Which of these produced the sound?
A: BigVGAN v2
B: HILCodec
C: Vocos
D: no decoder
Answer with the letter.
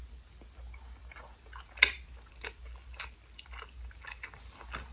D